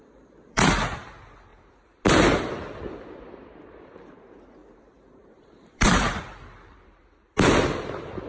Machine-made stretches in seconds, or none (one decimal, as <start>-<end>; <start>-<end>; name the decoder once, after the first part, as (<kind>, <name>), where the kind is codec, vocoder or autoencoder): 0.0-0.6 (vocoder, BigVGAN v2); 4.6-6.2